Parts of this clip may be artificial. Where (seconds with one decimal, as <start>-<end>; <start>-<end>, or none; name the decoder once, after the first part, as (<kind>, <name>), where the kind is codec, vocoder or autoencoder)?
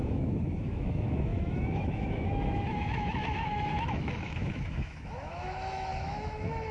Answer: 0.0-6.7 (autoencoder, DAC-VAE)